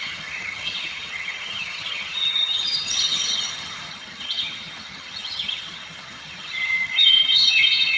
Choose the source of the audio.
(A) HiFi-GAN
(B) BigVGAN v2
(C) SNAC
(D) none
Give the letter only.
A